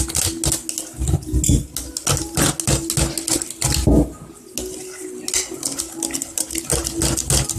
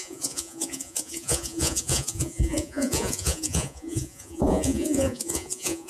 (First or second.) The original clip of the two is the first